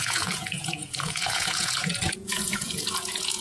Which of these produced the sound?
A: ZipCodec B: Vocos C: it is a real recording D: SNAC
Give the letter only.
B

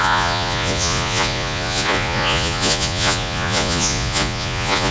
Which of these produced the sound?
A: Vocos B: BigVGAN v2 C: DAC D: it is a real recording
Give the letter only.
A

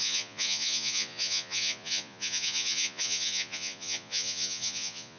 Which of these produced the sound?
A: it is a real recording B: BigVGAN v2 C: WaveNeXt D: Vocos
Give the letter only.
D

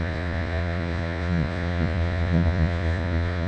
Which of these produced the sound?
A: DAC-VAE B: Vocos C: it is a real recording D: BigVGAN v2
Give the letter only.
B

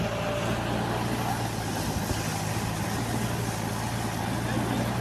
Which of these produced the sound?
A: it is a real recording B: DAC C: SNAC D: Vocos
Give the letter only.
A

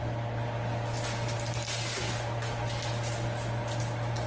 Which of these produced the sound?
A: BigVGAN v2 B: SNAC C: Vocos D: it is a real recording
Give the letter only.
D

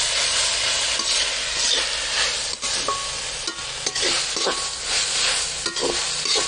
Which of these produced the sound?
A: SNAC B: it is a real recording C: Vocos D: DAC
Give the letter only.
B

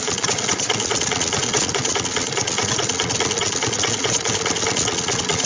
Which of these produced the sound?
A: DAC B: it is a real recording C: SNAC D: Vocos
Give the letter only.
D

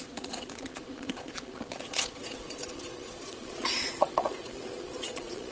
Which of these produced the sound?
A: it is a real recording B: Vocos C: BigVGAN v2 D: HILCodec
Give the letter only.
B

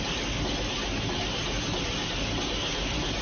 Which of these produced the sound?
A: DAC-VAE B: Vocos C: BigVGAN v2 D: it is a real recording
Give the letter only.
D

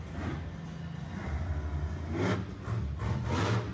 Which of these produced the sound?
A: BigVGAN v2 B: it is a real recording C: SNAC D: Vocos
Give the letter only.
B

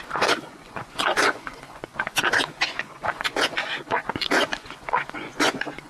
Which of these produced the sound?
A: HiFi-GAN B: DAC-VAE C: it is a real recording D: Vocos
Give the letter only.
D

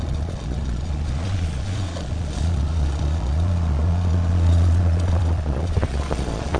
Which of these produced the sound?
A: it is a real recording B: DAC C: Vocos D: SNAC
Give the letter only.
C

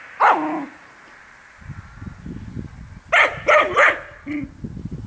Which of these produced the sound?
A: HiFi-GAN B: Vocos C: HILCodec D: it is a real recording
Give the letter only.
D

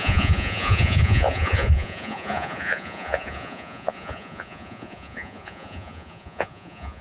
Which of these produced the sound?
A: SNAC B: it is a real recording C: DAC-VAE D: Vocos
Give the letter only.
D